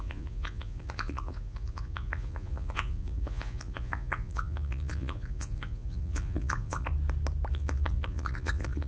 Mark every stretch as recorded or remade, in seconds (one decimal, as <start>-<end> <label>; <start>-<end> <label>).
0.0-6.9 remade; 6.9-7.5 recorded; 7.5-8.9 remade